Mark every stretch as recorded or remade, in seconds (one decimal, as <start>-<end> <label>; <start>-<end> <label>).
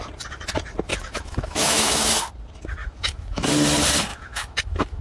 0.0-0.9 recorded; 0.9-2.1 remade; 2.1-2.8 recorded; 2.8-3.5 remade; 3.5-4.1 recorded; 4.1-5.0 remade